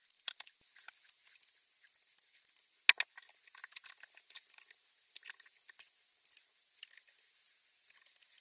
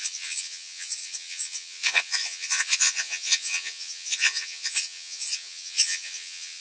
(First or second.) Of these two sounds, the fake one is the second